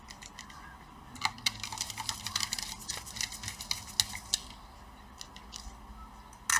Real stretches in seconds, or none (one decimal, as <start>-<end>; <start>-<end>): 0.0-1.7; 2.3-6.6